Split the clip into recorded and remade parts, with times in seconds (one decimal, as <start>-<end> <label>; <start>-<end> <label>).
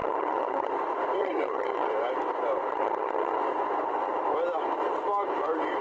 0.0-0.7 remade; 0.7-1.2 recorded; 1.2-1.9 remade; 1.9-2.7 recorded; 2.7-3.4 remade; 3.4-5.8 recorded